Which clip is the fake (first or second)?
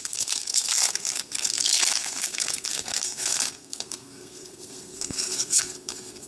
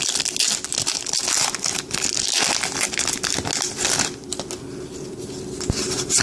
first